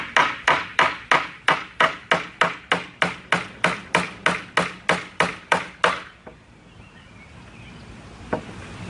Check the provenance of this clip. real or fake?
real